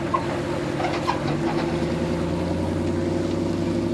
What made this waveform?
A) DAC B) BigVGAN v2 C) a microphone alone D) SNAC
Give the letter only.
C